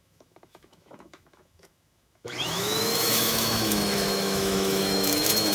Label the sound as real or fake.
fake